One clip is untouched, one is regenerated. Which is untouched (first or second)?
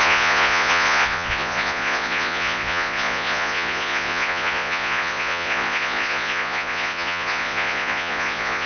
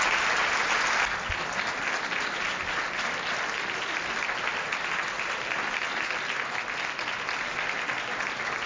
second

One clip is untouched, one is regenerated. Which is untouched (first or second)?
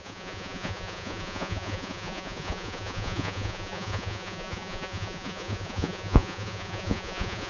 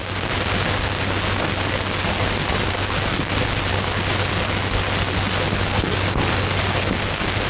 second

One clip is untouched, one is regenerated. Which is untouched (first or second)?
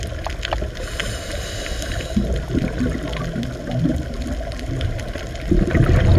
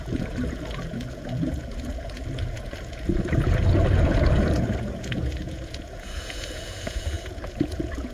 first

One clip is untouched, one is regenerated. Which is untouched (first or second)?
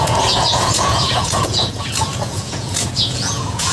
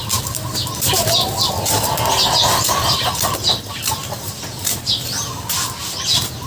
second